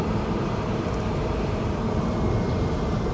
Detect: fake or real fake